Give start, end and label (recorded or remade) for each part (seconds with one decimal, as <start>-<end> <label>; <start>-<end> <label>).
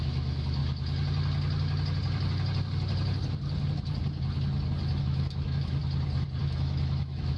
0.0-0.6 remade; 0.6-5.0 recorded; 5.0-5.8 remade; 5.8-6.4 recorded; 6.4-7.4 remade